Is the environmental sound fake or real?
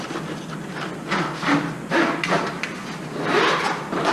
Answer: real